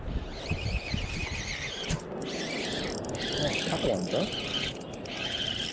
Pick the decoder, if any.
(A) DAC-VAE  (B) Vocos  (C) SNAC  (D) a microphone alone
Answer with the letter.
D